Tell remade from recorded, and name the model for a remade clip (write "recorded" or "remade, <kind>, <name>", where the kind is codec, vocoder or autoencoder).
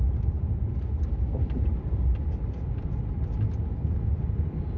recorded